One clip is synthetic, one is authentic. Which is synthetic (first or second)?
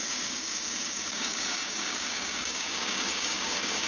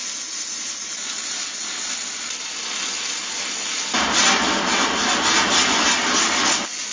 first